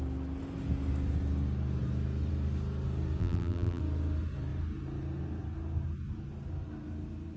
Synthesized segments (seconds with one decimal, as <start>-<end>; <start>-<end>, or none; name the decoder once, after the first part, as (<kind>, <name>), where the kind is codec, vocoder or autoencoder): 3.2-3.8 (vocoder, BigVGAN v2)